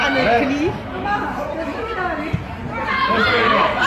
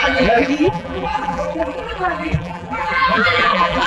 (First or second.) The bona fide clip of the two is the first